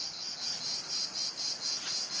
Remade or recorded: recorded